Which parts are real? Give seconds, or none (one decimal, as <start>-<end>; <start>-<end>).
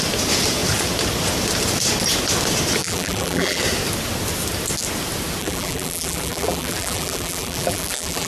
0.0-2.8; 3.6-5.4